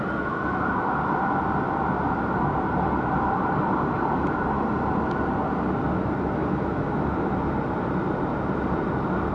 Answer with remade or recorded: recorded